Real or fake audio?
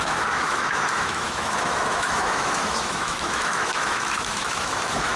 fake